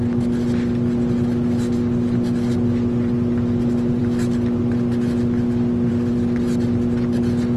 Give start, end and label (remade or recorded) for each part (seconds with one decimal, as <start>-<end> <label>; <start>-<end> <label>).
0.0-7.6 recorded